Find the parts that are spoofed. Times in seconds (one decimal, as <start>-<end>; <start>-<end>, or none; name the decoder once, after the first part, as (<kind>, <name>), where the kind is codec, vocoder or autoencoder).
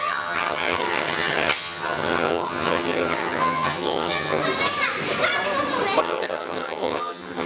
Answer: 0.0-4.4 (vocoder, HiFi-GAN); 6.0-7.5